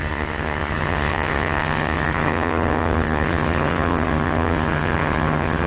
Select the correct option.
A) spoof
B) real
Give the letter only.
A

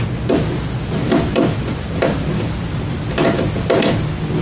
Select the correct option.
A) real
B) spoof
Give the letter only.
A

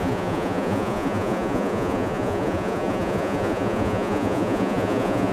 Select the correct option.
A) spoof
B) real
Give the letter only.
A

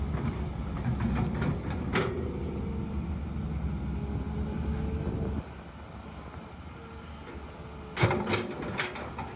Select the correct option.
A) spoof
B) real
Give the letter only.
B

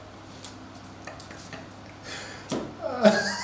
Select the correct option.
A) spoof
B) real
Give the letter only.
B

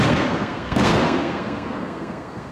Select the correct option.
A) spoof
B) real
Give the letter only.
A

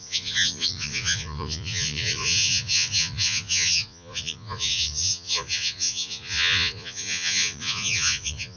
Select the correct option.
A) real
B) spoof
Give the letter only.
B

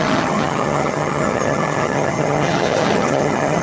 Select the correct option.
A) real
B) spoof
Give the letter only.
B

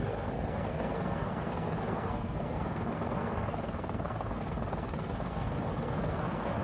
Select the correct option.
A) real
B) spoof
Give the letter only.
B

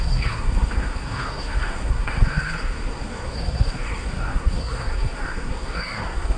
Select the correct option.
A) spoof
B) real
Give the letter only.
A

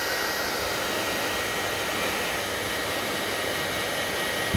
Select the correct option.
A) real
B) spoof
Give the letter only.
A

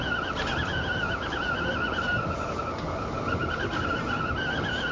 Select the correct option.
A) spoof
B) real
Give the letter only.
B